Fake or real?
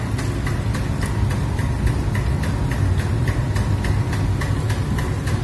real